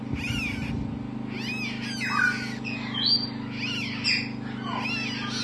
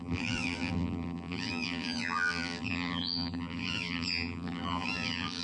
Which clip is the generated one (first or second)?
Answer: second